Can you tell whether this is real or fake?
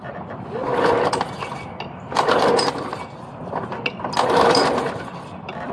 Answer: real